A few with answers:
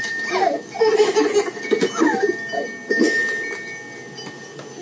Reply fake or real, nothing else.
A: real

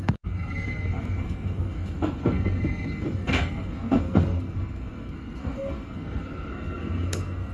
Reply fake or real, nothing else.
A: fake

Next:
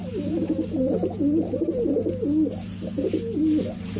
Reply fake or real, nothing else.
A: real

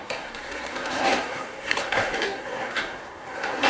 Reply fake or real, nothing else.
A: fake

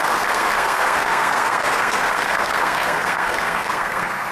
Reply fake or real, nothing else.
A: fake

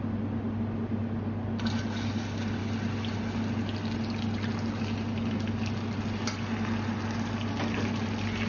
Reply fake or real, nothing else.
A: real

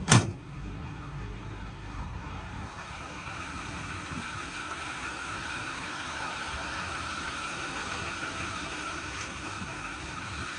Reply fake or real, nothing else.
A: fake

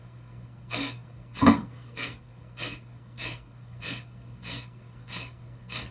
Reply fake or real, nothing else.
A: fake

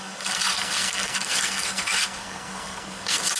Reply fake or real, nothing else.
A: fake